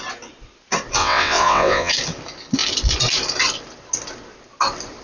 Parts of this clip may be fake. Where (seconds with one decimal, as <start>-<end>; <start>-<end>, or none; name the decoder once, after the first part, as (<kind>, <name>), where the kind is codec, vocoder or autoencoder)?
1.0-1.9 (vocoder, WaveNeXt)